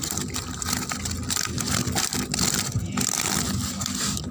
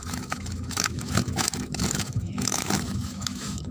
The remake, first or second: second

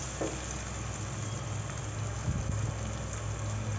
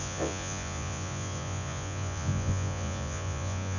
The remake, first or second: second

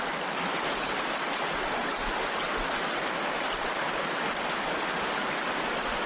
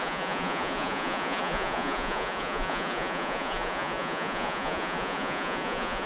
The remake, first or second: second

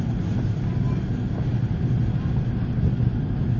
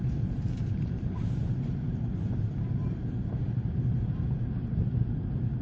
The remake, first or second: second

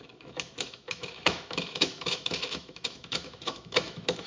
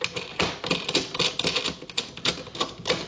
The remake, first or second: first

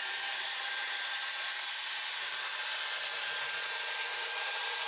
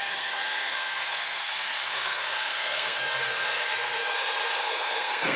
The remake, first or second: second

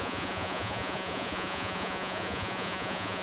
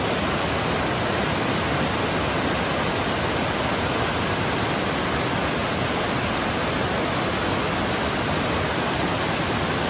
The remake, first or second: first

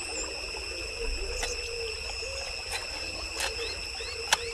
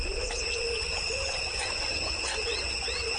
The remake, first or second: second